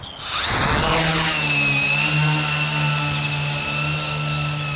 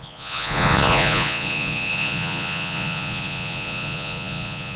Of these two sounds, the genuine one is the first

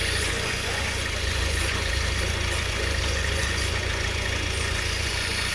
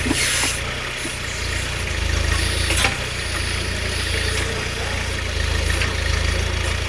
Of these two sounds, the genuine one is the second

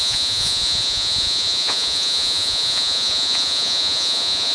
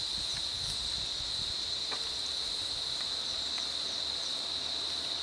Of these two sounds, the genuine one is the second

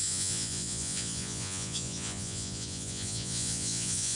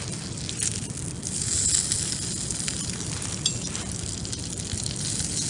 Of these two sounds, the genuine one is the second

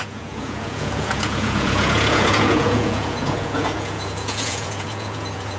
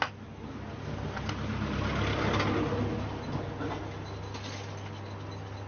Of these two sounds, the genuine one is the second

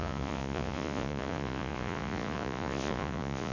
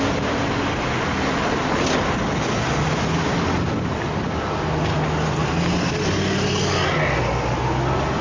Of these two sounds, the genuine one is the second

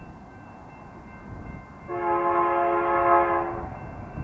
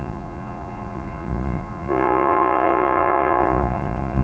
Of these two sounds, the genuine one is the first